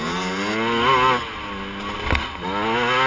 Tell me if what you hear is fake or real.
real